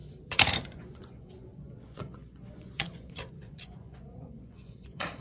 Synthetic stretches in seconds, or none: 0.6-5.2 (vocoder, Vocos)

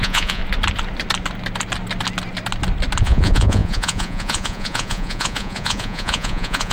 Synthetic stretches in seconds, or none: 0.0-0.4 (vocoder, Vocos); 3.0-6.7

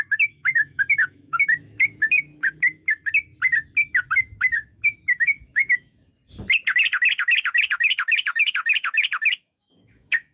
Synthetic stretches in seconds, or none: 0.0-3.0 (autoencoder, DAC-VAE); 3.9-6.1; 7.6-10.3

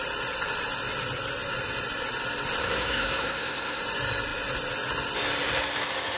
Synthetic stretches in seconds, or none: 2.6-3.8 (codec, SNAC)

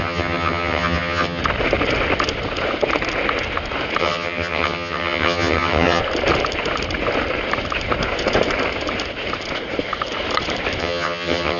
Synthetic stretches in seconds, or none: 0.0-1.4 (vocoder, HiFi-GAN); 4.0-6.0; 10.8-11.6